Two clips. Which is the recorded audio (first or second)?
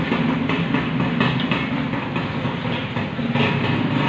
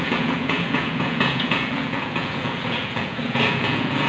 first